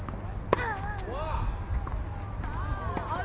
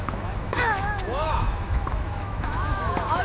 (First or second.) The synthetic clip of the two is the second